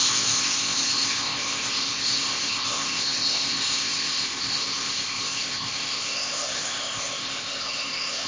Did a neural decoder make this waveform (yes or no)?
yes